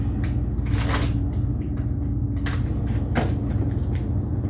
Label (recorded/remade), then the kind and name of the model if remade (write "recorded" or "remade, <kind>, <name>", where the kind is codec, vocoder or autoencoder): recorded